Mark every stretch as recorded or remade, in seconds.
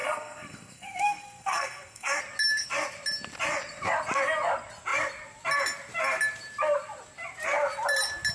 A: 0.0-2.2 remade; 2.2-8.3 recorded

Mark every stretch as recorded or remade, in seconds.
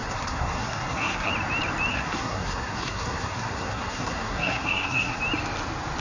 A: 0.0-1.3 remade; 1.3-1.9 recorded; 1.9-5.2 remade; 5.2-6.0 recorded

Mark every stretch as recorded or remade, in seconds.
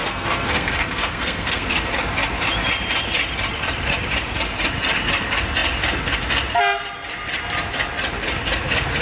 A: 0.0-1.9 remade; 1.9-9.0 recorded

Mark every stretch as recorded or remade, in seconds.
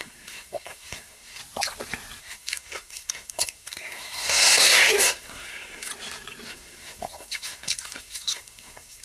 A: 0.0-1.4 remade; 1.4-2.2 recorded; 2.2-5.9 remade; 5.9-6.5 recorded; 6.5-9.0 remade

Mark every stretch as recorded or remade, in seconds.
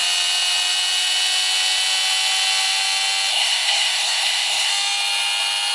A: 0.0-3.3 recorded; 3.3-4.7 remade; 4.7-5.7 recorded